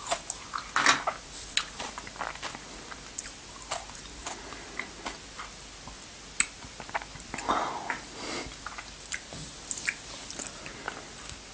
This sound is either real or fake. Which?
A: real